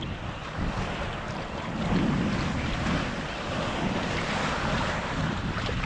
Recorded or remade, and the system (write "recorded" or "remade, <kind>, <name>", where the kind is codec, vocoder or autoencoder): recorded